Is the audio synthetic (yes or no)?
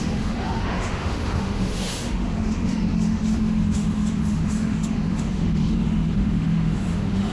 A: yes